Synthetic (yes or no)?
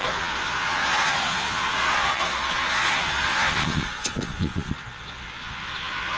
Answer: yes